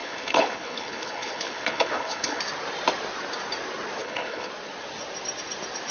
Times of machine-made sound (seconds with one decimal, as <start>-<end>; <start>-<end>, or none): 0.0-2.4; 4.0-4.5